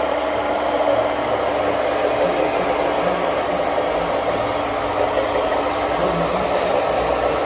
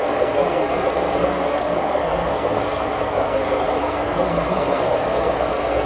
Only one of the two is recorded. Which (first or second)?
first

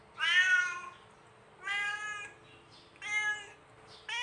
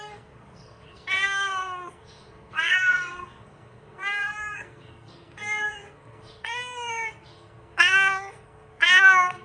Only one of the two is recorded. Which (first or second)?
first